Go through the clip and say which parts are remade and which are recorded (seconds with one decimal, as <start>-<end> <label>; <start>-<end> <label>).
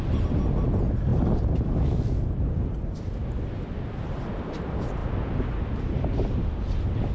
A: 0.0-7.1 recorded